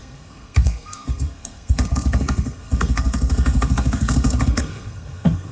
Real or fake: fake